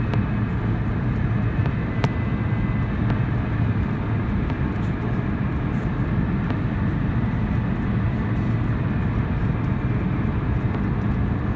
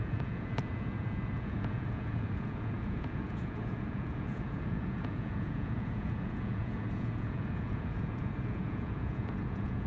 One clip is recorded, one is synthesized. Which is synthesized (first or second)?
second